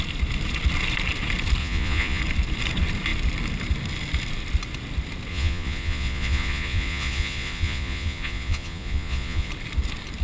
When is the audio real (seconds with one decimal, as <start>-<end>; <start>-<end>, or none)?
0.0-1.6; 2.2-5.3; 9.5-10.2